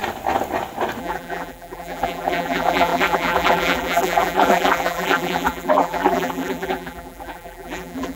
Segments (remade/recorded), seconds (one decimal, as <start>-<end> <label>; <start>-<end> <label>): 0.0-1.0 recorded; 1.0-8.2 remade

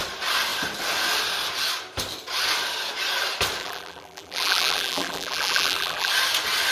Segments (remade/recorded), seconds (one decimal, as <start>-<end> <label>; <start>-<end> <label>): 0.0-3.6 recorded; 3.6-6.1 remade; 6.1-6.7 recorded

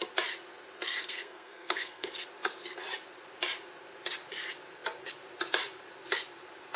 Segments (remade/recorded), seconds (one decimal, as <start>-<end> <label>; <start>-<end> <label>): 0.0-1.0 recorded; 1.0-2.1 remade; 2.1-6.8 recorded

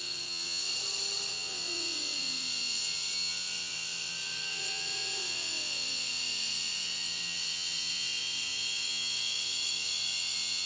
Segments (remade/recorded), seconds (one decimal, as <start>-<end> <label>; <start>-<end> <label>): 0.0-0.7 remade; 0.7-1.3 recorded; 1.3-10.7 remade